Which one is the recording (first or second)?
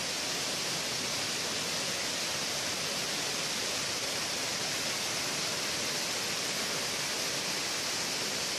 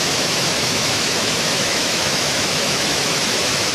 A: first